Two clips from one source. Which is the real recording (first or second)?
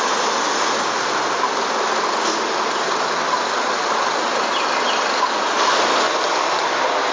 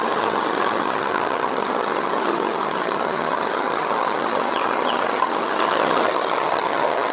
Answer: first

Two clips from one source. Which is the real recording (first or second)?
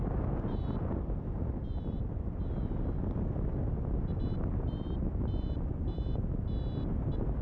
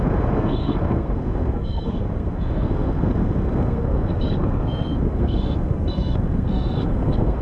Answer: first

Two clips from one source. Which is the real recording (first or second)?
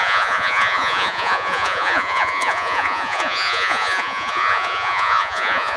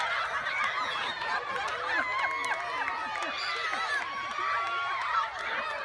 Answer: second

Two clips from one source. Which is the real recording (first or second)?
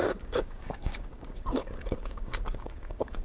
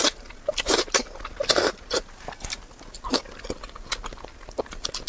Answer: second